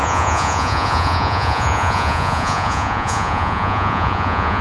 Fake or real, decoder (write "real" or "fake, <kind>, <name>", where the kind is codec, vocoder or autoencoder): fake, vocoder, Vocos